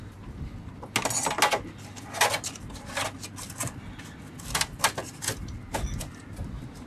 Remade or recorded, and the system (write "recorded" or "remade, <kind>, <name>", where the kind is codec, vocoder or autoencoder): recorded